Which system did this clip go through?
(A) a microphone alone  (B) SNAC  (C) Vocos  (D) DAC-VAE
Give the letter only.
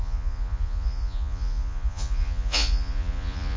C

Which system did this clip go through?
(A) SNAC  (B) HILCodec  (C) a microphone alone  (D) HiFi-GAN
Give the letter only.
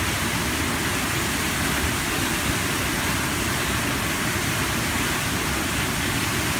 C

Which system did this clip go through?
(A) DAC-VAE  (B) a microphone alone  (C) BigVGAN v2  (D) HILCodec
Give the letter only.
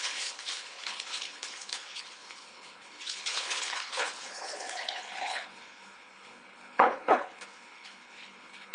D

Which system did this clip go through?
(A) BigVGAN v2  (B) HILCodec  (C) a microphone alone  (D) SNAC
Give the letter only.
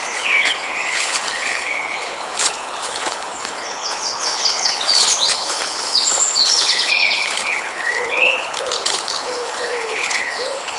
B